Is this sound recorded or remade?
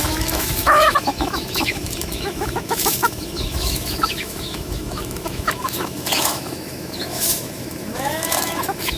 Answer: remade